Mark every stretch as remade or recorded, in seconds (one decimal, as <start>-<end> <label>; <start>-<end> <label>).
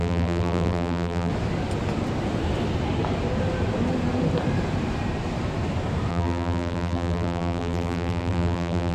0.0-1.3 remade; 1.3-6.1 recorded; 6.1-8.9 remade